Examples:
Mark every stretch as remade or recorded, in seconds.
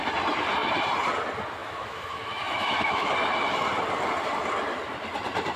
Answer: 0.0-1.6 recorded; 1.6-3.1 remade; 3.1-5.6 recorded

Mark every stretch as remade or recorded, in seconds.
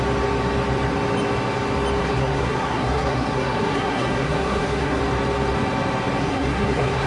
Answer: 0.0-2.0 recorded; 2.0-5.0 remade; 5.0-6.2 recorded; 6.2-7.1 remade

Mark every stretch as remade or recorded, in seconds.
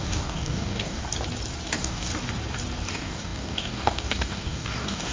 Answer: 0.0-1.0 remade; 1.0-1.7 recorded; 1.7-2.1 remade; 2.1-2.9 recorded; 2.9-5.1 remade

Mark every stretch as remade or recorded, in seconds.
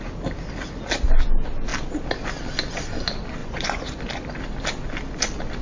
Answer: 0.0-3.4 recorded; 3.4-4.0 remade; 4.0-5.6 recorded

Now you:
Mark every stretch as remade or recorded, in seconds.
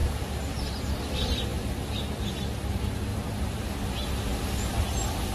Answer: 0.0-1.0 remade; 1.0-5.3 recorded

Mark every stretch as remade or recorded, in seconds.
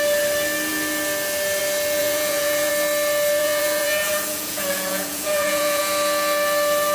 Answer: 0.0-2.0 recorded; 2.0-2.7 remade; 2.7-3.4 recorded; 3.4-5.8 remade; 5.8-6.9 recorded